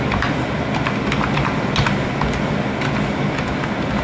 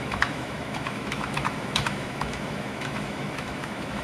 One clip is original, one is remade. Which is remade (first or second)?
second